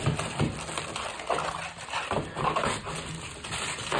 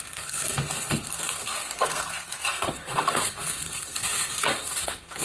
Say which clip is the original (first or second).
first